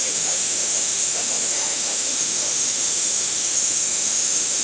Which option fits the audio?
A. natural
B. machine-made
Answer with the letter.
B